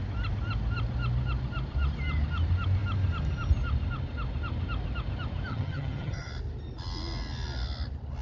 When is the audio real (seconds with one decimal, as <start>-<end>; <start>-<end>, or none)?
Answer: 0.0-5.5; 6.3-8.2